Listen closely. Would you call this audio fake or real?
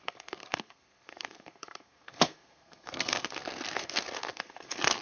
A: fake